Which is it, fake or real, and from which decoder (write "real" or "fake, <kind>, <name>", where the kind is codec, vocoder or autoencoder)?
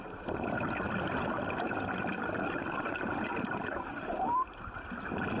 real